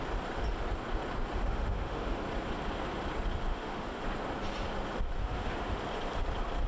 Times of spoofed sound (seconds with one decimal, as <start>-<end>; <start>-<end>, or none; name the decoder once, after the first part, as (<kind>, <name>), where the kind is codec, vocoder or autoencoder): 1.4-2.2 (autoencoder, DAC-VAE); 3.5-4.0; 5.2-5.8